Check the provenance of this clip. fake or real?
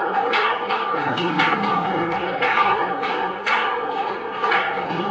fake